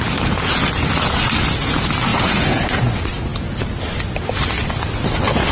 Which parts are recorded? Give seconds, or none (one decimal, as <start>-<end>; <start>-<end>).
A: 0.0-2.1; 2.8-5.5